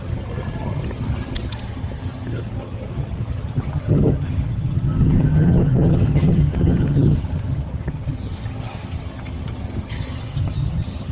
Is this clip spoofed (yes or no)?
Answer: yes